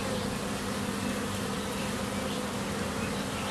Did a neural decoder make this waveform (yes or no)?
no